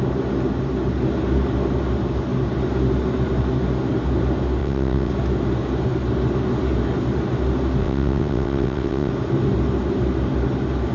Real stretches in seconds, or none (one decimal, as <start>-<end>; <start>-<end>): 0.0-4.6; 5.1-7.8; 9.1-10.9